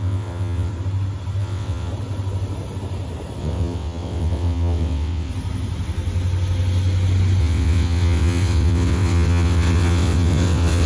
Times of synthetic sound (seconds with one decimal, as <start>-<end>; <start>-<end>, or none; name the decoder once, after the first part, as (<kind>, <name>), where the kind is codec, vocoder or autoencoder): 0.0-0.7 (vocoder, WaveNeXt); 1.4-1.9; 3.4-5.3; 7.4-10.9